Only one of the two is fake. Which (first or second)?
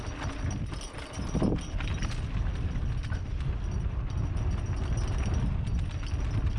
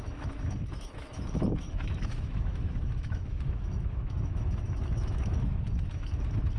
second